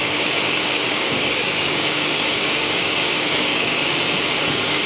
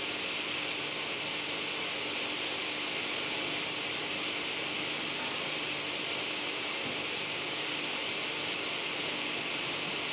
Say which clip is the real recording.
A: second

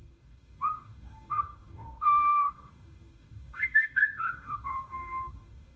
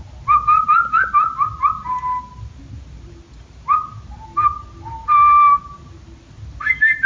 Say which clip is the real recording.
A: second